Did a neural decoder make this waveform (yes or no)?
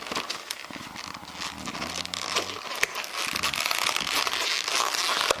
no